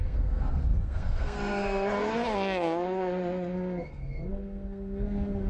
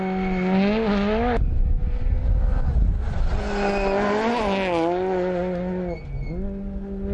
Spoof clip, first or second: first